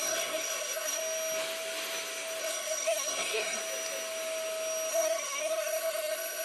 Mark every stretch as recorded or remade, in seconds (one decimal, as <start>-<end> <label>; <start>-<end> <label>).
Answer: 0.0-1.0 remade; 1.0-2.4 recorded; 2.4-3.6 remade; 3.6-4.9 recorded; 4.9-6.4 remade